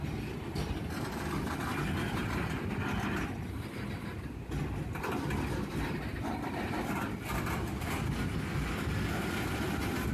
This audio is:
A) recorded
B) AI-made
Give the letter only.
A